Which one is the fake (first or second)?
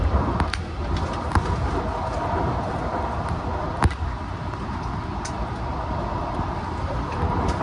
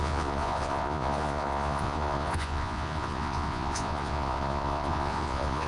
second